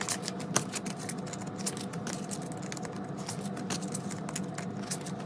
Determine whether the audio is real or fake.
real